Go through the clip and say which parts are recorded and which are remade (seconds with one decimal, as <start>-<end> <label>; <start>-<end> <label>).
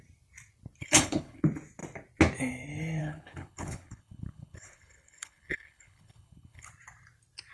0.0-0.8 recorded; 0.8-1.4 remade; 1.4-3.0 recorded; 3.0-6.7 remade; 6.7-7.5 recorded